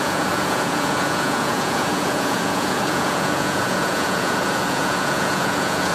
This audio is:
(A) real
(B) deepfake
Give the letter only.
B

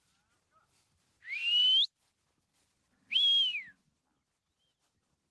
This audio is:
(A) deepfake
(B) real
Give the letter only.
B